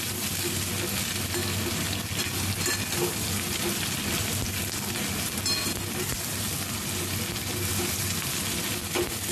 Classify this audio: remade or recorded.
recorded